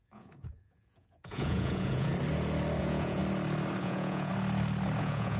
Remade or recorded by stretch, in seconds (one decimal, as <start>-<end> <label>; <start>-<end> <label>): 0.0-2.1 remade; 2.1-2.8 recorded; 2.8-3.2 remade; 3.2-3.8 recorded; 3.8-4.3 remade; 4.3-5.0 recorded; 5.0-5.4 remade